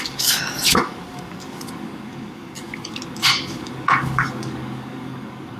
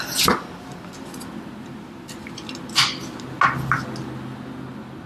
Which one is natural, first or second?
second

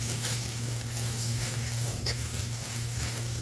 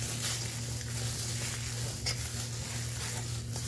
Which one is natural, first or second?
second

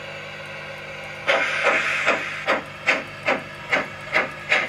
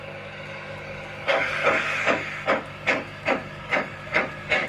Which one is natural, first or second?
first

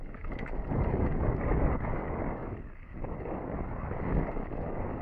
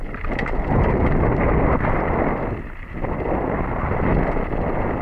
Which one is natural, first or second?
second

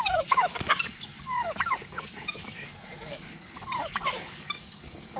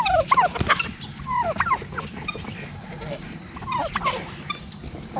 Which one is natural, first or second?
second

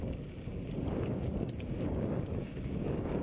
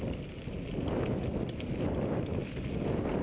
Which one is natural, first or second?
second